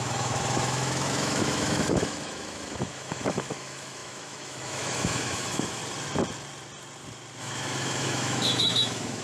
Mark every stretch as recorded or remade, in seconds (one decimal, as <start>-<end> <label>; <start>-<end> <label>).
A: 0.0-5.8 remade; 5.8-7.4 recorded; 7.4-9.2 remade